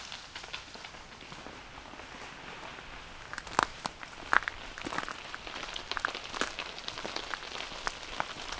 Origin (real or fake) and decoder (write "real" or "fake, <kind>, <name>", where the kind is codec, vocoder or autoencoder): real